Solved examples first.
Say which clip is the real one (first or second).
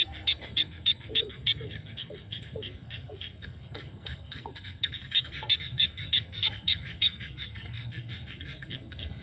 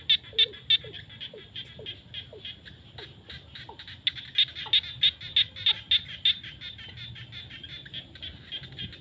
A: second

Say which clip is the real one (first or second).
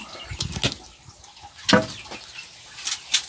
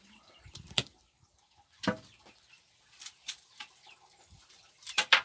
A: first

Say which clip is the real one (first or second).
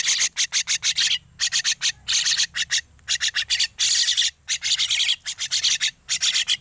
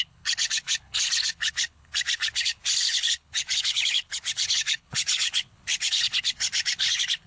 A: first